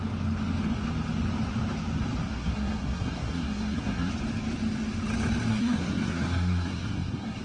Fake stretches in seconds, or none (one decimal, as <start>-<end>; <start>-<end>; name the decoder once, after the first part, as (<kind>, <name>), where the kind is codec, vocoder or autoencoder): 2.3-4.1 (codec, SNAC); 5.5-7.4